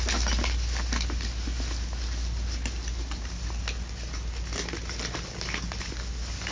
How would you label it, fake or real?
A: real